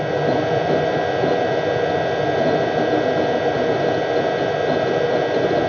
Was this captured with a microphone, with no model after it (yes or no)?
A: yes